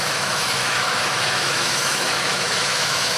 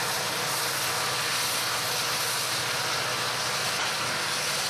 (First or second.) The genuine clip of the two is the second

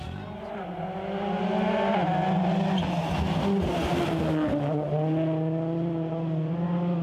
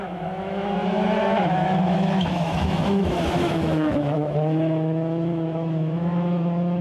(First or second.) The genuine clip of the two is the first